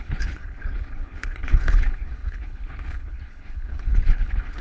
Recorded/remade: remade